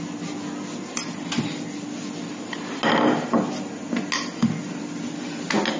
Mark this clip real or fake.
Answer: real